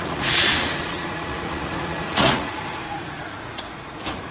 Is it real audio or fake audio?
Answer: fake